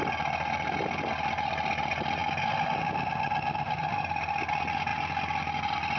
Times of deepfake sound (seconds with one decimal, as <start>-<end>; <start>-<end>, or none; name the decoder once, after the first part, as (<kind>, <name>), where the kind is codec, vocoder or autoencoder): 0.0-2.2 (vocoder, BigVGAN v2); 4.5-6.0